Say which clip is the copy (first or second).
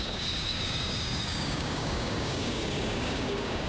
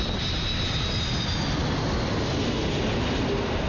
first